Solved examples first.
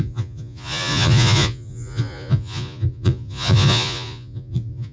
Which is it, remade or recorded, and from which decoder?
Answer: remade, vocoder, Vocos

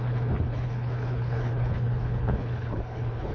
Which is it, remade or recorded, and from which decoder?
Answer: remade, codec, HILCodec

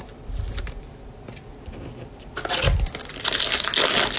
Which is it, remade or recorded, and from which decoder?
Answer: recorded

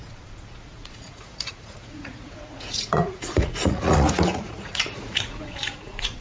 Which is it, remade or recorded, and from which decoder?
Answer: remade, vocoder, Vocos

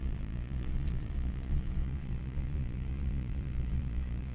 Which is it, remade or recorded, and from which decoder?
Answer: remade, vocoder, Vocos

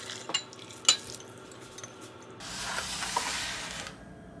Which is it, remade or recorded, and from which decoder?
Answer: recorded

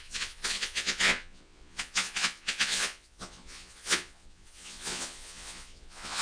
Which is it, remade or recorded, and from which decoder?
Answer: remade, vocoder, Vocos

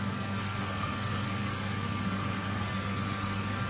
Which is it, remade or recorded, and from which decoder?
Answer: remade, codec, SNAC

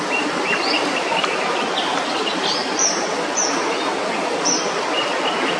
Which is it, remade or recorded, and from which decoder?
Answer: remade, vocoder, BigVGAN v2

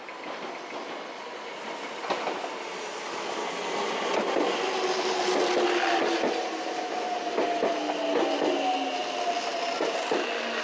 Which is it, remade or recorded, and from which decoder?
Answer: recorded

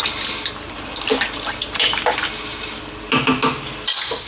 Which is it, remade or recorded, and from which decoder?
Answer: recorded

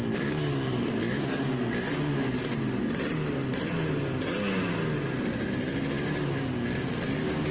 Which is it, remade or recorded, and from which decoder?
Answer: recorded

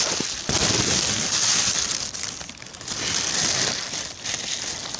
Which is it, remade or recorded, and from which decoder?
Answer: recorded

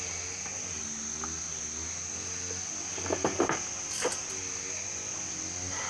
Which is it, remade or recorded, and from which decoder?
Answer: recorded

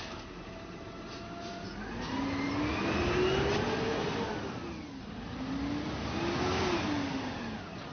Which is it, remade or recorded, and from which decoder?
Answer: recorded